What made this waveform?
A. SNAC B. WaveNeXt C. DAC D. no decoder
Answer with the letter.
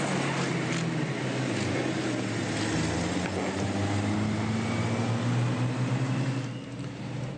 D